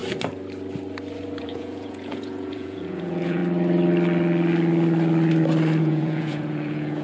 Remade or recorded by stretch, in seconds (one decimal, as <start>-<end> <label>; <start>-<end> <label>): 0.0-1.4 recorded; 1.4-3.4 remade; 3.4-5.8 recorded; 5.8-7.0 remade